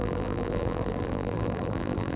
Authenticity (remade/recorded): remade